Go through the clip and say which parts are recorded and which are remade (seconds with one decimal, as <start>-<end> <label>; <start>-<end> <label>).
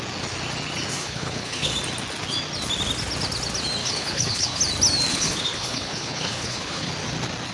0.0-1.0 recorded; 1.0-1.7 remade; 1.7-3.8 recorded; 3.8-4.6 remade; 4.6-5.1 recorded; 5.1-6.9 remade; 6.9-7.5 recorded